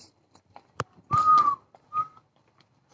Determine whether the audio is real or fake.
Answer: fake